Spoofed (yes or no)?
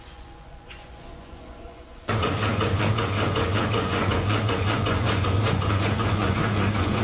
yes